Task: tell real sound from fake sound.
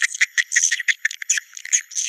fake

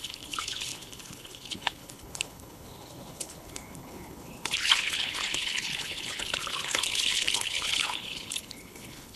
fake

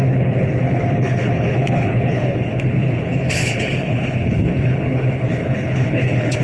fake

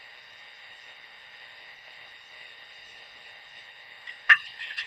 fake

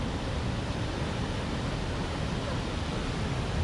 real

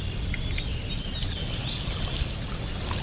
real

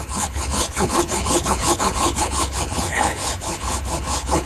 fake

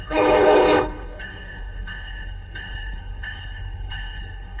fake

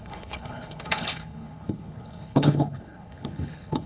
fake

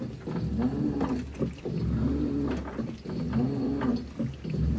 real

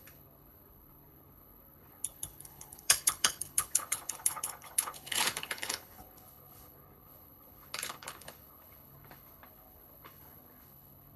fake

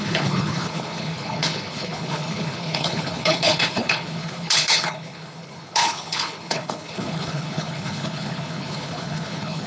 fake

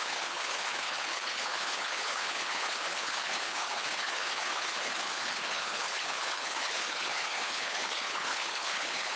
fake